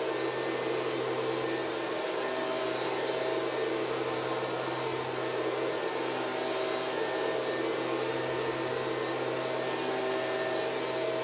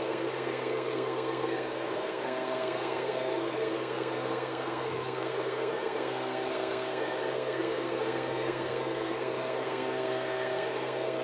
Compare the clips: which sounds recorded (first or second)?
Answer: first